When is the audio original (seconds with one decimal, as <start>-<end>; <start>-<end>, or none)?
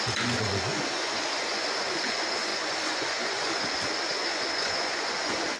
none